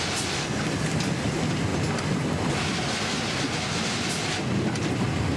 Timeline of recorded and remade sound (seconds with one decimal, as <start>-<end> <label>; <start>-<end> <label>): 0.0-5.4 recorded